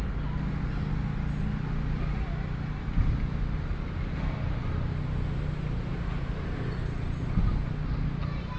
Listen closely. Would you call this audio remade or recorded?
recorded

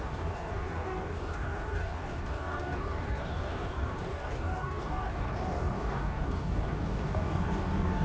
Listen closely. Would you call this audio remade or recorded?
remade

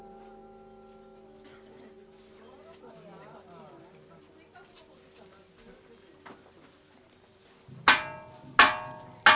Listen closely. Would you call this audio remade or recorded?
recorded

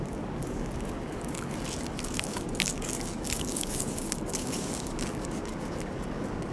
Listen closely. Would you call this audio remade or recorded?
remade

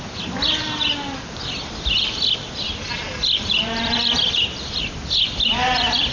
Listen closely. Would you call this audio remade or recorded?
recorded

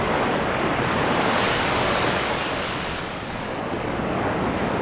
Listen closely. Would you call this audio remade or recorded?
remade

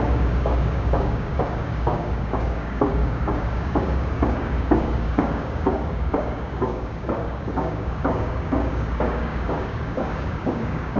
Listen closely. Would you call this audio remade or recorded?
remade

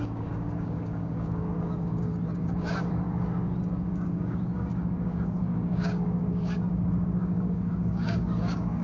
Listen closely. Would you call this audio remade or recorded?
remade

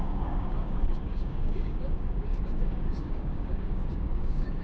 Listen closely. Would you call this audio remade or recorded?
remade